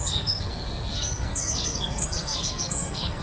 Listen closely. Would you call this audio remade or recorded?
remade